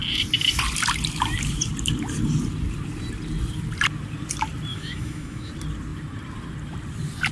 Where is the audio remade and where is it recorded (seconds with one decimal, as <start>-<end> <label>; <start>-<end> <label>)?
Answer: 0.0-4.7 recorded; 4.7-5.5 remade; 5.5-7.3 recorded